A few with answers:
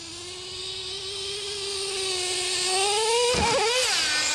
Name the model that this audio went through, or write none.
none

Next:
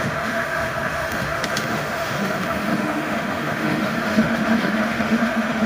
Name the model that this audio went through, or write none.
autoencoder, DAC-VAE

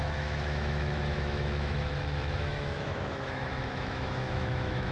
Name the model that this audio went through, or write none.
autoencoder, DAC-VAE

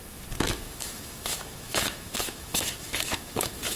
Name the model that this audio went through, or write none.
autoencoder, DAC-VAE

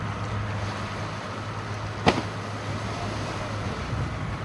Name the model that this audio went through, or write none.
none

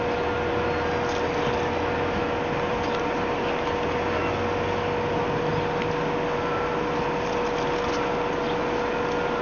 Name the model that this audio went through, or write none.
none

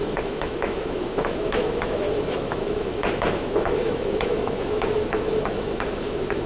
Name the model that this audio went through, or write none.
autoencoder, DAC-VAE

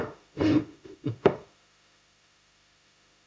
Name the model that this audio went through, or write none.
autoencoder, DAC-VAE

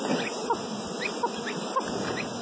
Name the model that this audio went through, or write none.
none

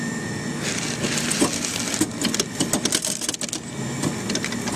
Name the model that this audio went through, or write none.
none